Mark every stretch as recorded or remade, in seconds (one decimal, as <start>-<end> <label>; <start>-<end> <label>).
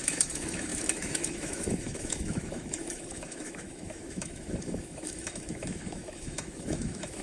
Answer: 0.0-7.2 remade